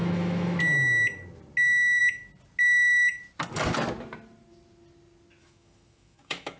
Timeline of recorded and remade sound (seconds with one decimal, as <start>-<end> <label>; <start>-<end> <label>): 0.0-0.6 remade; 0.6-5.4 recorded; 5.4-6.6 remade